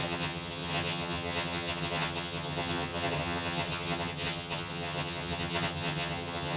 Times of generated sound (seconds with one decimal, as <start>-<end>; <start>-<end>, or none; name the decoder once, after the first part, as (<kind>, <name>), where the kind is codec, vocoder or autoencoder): 0.0-6.6 (vocoder, HiFi-GAN)